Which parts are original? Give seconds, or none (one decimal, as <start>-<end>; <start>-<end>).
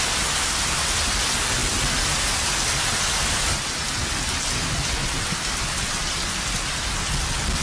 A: 0.0-7.6